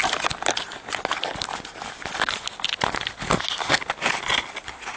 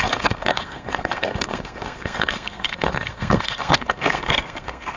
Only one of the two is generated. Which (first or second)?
second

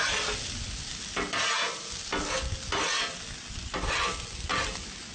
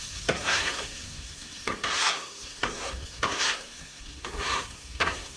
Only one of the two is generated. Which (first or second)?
second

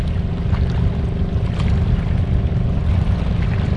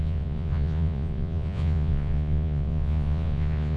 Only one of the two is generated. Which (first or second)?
second